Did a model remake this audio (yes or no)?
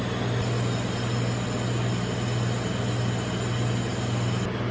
no